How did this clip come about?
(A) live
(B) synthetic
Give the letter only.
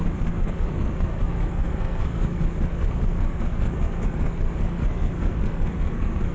B